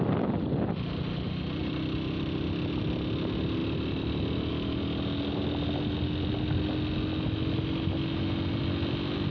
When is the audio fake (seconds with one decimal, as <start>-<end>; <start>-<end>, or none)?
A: 1.6-2.7; 3.6-4.5